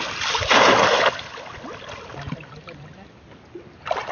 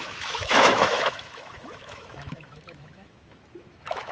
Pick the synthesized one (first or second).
second